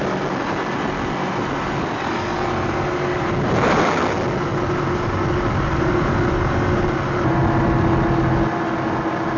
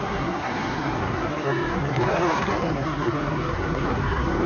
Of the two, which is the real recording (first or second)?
first